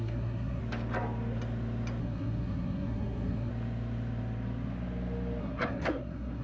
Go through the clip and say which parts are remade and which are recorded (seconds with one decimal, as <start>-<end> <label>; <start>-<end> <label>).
0.0-0.6 remade; 0.6-2.0 recorded; 2.0-3.5 remade; 3.5-5.4 recorded; 5.4-6.4 remade